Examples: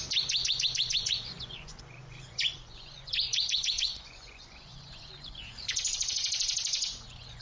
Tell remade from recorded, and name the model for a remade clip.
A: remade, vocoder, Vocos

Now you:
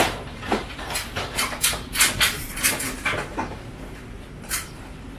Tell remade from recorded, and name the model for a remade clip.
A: remade, vocoder, BigVGAN v2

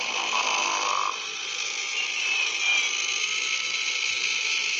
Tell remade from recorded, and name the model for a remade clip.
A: recorded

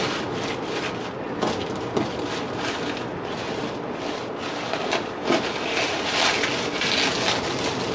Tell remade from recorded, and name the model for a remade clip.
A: recorded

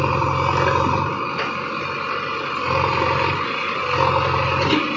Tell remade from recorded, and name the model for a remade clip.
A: recorded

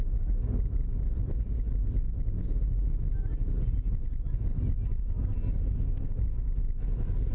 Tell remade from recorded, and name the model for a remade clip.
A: recorded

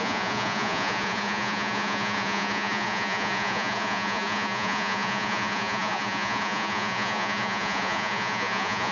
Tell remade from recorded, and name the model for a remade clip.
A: remade, vocoder, Vocos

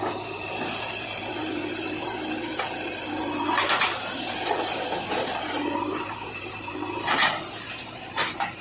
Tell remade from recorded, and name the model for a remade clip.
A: remade, vocoder, BigVGAN v2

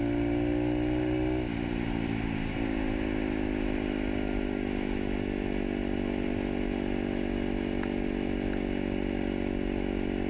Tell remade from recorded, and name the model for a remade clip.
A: recorded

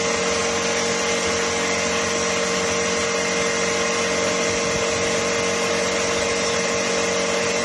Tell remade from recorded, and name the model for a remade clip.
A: recorded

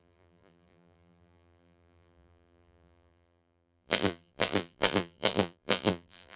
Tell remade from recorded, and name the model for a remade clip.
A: remade, vocoder, BigVGAN v2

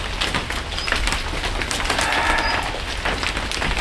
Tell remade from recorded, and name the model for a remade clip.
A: recorded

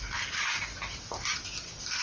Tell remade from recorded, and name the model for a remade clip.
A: recorded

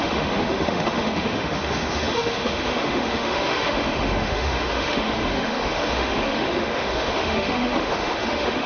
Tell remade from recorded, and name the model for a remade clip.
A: remade, autoencoder, DAC-VAE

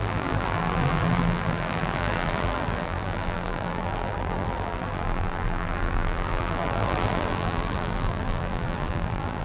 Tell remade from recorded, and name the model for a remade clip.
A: remade, vocoder, BigVGAN v2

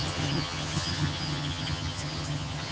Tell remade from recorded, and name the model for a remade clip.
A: remade, vocoder, HiFi-GAN